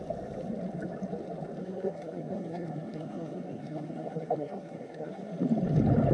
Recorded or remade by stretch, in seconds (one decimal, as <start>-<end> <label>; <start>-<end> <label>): 0.0-1.6 recorded; 1.6-5.3 remade; 5.3-6.1 recorded